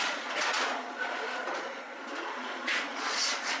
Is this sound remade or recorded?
remade